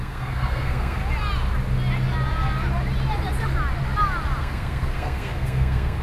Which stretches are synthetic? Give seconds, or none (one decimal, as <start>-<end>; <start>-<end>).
0.0-1.0; 4.4-6.0